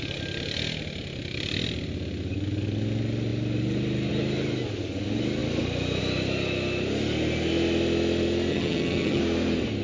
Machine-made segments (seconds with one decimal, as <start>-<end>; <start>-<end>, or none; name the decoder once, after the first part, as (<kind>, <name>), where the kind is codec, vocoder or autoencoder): 8.5-9.2 (vocoder, HiFi-GAN)